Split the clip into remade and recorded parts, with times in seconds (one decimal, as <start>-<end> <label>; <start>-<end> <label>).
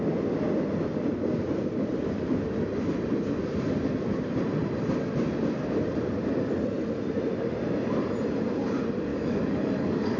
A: 0.0-9.1 recorded; 9.1-10.2 remade